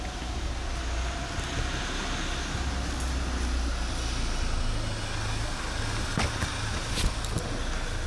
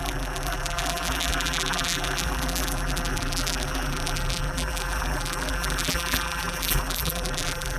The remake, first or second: second